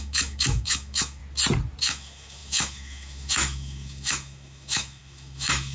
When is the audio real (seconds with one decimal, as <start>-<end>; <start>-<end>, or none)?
1.2-1.8